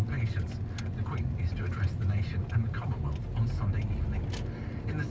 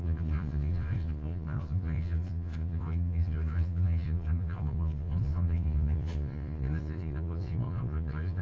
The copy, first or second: second